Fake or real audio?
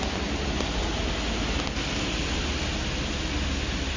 real